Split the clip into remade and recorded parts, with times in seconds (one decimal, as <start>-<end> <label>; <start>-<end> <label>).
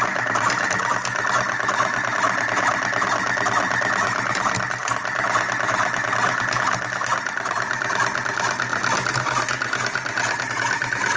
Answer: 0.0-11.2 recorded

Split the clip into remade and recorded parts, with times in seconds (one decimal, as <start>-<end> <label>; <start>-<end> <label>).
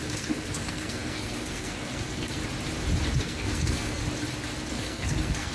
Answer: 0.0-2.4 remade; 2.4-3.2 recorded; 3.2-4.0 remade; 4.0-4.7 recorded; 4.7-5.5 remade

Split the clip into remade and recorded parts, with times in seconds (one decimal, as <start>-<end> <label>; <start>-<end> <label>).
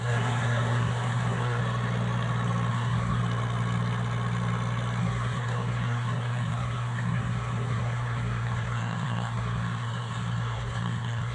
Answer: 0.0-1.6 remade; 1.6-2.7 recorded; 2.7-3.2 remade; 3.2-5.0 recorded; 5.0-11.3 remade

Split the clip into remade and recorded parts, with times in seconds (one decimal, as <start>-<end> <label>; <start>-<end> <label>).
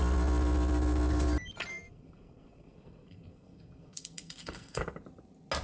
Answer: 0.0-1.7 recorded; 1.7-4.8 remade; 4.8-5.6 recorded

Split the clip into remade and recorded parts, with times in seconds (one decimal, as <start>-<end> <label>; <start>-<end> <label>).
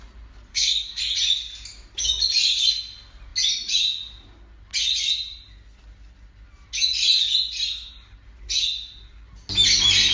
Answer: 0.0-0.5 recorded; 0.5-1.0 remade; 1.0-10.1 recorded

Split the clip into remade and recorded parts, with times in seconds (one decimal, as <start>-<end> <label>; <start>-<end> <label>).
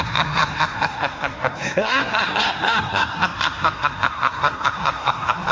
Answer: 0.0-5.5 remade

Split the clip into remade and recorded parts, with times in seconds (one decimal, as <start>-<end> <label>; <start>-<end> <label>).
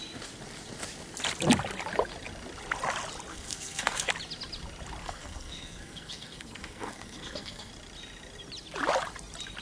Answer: 0.0-3.3 recorded; 3.3-4.1 remade; 4.1-5.0 recorded; 5.0-7.7 remade; 7.7-9.6 recorded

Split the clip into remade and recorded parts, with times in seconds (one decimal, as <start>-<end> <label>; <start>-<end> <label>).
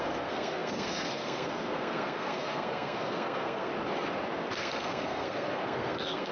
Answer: 0.0-3.7 remade; 3.7-4.5 recorded; 4.5-6.3 remade